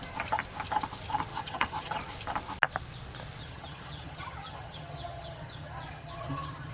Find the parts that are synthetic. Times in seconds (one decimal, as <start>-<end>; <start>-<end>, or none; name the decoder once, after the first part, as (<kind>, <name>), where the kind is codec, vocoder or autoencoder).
1.3-2.0 (vocoder, HiFi-GAN); 3.4-6.7